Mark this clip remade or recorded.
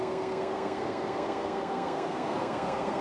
remade